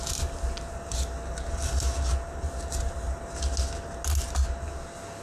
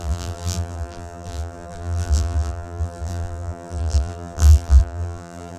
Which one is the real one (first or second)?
first